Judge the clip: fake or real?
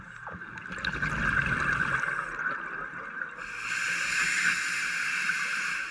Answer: real